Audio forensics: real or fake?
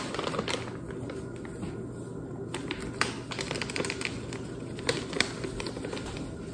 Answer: real